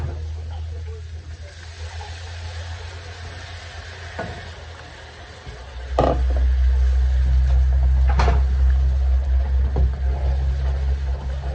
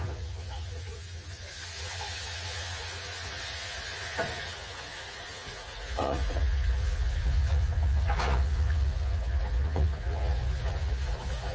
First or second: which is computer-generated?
second